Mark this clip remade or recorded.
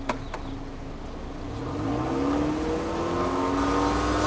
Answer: recorded